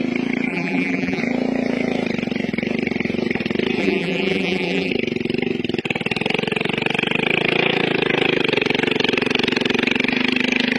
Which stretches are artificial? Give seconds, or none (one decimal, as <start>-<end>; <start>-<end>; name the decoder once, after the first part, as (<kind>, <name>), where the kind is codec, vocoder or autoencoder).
0.5-1.2 (vocoder, BigVGAN v2); 3.8-4.9